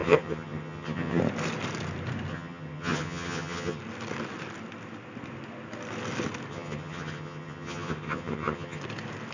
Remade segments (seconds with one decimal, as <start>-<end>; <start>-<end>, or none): 0.0-1.2; 2.3-3.8; 6.5-8.8